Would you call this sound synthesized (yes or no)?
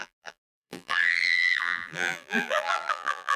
yes